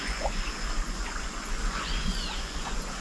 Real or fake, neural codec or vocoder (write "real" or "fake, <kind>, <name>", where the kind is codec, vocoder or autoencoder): fake, vocoder, Vocos